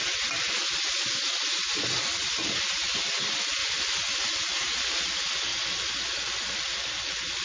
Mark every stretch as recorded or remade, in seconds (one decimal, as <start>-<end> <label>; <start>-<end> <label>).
0.0-3.6 recorded; 3.6-4.3 remade; 4.3-7.4 recorded